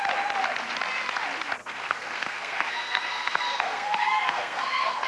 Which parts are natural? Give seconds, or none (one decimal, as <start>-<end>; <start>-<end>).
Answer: 0.0-1.6